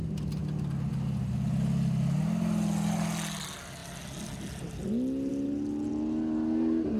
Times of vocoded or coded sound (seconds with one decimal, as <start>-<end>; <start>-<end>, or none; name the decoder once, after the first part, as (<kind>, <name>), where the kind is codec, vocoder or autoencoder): none